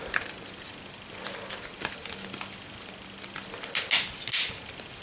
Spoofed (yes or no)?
no